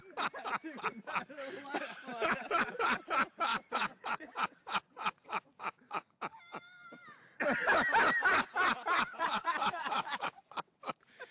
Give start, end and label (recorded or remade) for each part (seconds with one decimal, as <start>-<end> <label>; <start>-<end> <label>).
0.0-3.5 recorded; 3.5-6.2 remade; 6.2-9.1 recorded; 9.1-10.9 remade; 10.9-11.3 recorded